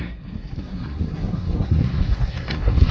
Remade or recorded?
remade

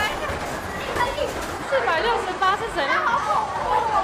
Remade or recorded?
recorded